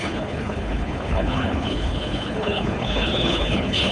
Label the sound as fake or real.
fake